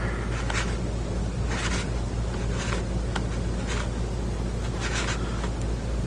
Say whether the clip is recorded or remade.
recorded